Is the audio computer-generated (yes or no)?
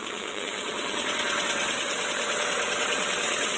yes